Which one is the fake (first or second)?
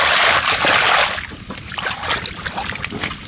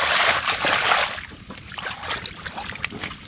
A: second